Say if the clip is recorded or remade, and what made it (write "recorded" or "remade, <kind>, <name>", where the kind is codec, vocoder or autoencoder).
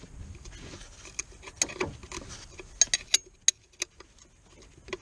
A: recorded